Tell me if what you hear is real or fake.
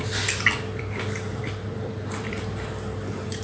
fake